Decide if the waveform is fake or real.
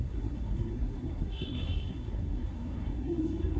fake